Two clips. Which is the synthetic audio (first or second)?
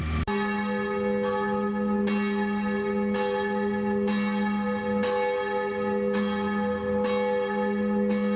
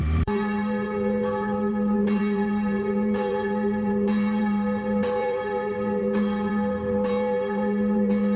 second